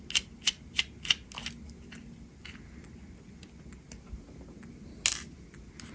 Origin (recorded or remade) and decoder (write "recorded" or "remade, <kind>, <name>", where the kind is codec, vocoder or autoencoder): recorded